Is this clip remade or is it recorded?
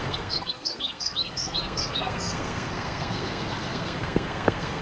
remade